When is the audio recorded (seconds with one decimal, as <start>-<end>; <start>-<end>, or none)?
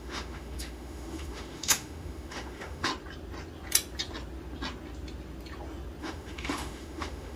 2.9-6.0